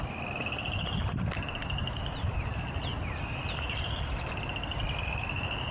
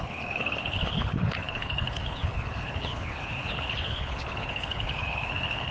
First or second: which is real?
first